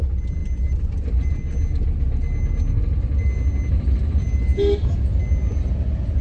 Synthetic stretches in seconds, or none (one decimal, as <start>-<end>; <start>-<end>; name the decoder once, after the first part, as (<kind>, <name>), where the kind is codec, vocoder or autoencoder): none